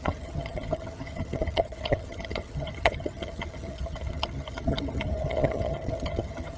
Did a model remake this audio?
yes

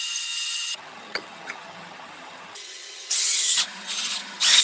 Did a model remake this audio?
yes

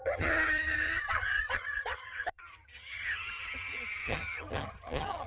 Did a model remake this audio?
yes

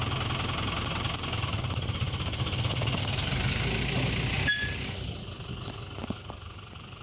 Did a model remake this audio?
no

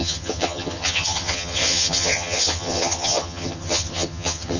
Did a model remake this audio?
yes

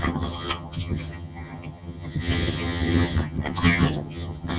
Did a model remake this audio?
yes